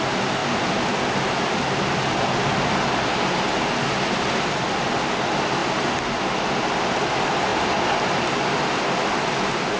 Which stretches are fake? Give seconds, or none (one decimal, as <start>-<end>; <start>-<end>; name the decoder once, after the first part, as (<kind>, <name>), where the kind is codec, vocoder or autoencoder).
none